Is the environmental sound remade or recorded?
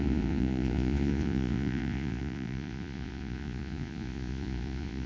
remade